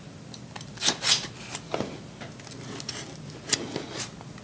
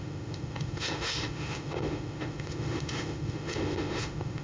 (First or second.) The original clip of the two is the first